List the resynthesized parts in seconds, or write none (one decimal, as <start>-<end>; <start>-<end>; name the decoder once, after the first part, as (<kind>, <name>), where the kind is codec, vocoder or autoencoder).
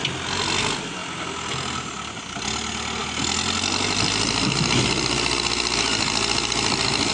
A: none